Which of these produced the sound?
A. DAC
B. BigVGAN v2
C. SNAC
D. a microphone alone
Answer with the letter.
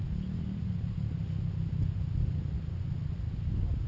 D